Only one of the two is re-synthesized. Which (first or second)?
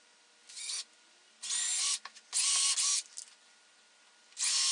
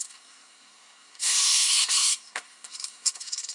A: second